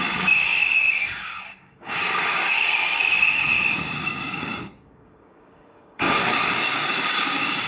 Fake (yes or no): yes